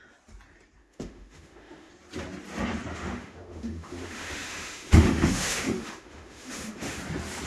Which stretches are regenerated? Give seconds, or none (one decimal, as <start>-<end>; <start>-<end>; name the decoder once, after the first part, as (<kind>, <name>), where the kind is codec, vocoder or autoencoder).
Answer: 0.8-1.9 (autoencoder, DAC-VAE); 2.9-7.0